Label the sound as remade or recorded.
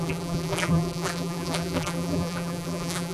remade